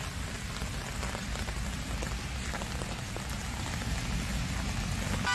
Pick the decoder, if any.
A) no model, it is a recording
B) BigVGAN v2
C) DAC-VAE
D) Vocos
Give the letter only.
A